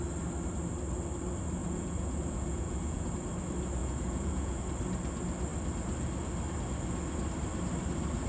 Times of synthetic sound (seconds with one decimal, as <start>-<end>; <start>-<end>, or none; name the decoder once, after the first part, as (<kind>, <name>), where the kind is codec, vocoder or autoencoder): 1.6-3.1 (vocoder, Vocos); 3.8-4.6